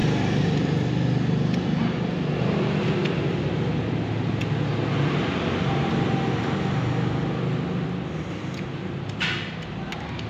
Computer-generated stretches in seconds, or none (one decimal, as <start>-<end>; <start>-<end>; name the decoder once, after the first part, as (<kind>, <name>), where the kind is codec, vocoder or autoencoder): none